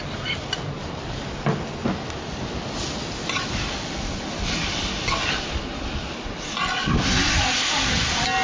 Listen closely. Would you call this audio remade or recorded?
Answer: recorded